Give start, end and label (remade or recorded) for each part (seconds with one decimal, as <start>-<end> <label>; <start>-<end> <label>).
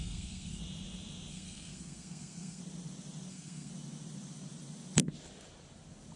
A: 0.0-0.6 remade; 0.6-1.3 recorded; 1.3-2.6 remade; 2.6-3.3 recorded; 3.3-3.7 remade; 3.7-6.2 recorded